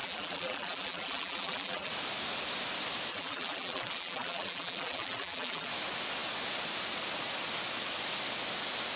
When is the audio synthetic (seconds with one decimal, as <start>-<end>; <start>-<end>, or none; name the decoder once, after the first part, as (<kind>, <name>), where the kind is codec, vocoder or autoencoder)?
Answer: 0.0-1.9 (vocoder, BigVGAN v2); 3.1-5.7